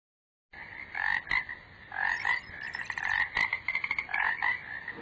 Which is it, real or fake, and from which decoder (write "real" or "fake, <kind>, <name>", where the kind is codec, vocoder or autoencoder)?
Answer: real